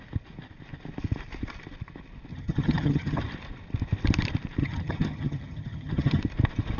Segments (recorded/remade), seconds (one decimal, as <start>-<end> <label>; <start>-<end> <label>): 0.0-2.3 recorded; 2.3-3.2 remade; 3.2-4.6 recorded; 4.6-6.2 remade; 6.2-6.8 recorded